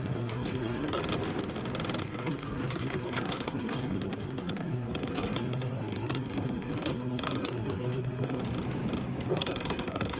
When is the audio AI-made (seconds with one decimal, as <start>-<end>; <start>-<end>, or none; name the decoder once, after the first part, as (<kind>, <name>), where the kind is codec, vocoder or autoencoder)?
0.0-1.0 (codec, SNAC); 2.0-8.4; 9.3-10.2

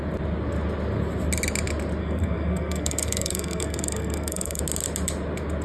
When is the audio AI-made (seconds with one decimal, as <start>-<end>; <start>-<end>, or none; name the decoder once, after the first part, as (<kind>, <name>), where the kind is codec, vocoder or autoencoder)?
2.0-4.6 (codec, SNAC)

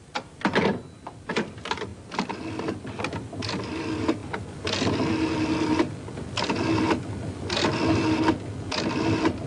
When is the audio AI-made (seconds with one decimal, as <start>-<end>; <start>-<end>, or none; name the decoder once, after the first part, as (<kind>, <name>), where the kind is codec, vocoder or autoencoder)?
none